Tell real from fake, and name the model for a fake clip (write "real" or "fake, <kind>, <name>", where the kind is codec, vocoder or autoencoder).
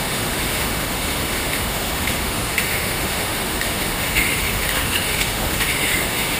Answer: fake, autoencoder, DAC-VAE